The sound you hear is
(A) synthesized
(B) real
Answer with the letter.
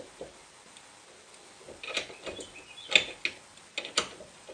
B